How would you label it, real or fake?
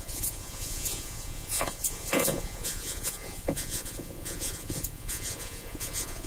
fake